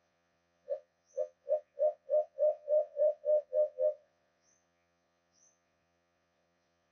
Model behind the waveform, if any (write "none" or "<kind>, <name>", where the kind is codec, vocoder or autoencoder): vocoder, Vocos